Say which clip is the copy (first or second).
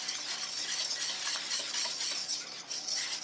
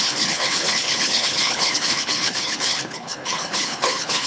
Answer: second